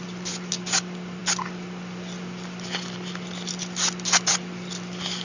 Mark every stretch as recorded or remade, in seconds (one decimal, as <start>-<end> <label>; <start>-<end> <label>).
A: 0.0-5.2 recorded